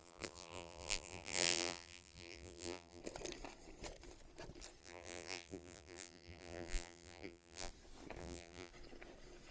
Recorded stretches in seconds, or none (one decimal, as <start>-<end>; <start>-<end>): 3.0-4.8; 7.7-8.2; 8.7-9.5